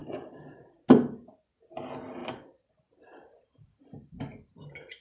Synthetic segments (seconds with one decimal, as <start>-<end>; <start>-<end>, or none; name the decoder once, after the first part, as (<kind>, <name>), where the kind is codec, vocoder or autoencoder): 0.0-0.6 (vocoder, BigVGAN v2); 2.2-5.0